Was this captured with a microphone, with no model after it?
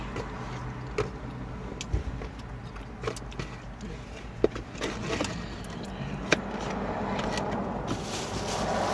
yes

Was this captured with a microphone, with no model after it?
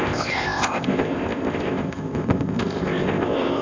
no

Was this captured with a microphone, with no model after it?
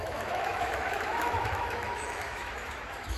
no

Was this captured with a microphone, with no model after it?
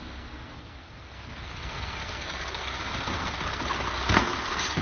no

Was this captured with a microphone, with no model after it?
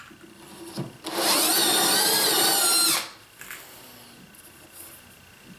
yes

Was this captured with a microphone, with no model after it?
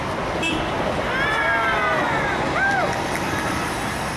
yes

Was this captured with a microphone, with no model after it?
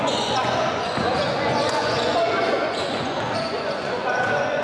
no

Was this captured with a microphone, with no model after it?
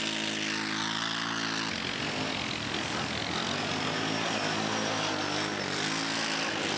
yes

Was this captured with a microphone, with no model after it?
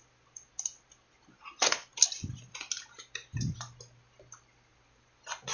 yes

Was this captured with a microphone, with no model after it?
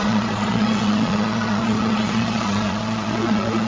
no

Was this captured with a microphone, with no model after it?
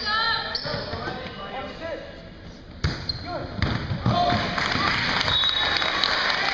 yes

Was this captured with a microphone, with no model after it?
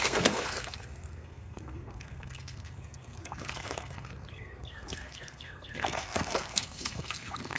no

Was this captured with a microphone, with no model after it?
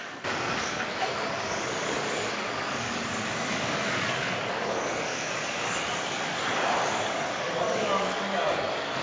no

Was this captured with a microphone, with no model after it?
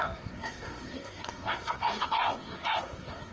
no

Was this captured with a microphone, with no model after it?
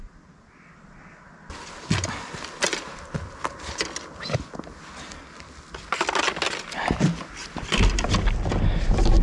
yes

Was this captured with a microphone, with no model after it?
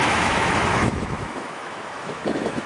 no